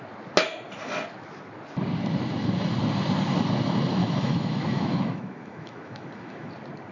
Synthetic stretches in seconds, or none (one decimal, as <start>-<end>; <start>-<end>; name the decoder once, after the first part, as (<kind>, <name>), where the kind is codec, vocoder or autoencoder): 4.0-6.5 (autoencoder, DAC-VAE)

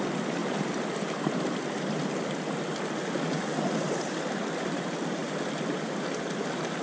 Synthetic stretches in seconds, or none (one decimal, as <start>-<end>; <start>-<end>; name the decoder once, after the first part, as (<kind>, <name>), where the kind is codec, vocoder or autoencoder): none